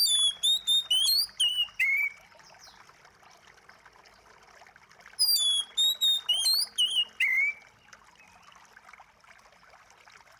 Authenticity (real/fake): real